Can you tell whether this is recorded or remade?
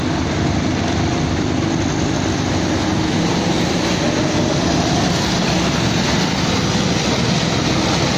recorded